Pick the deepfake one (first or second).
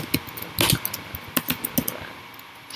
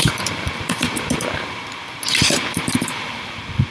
second